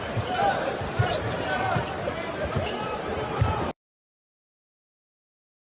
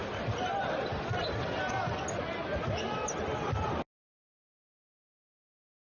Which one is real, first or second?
second